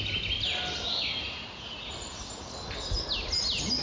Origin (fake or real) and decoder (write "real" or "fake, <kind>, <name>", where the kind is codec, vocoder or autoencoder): real